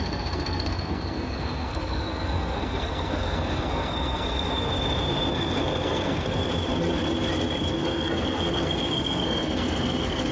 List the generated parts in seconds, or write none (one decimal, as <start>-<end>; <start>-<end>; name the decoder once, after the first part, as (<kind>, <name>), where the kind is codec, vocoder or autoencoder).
0.0-4.7 (codec, SNAC); 5.3-6.4; 7.7-10.3